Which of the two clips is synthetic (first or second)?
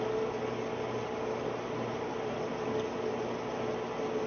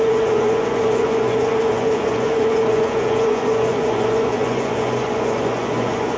second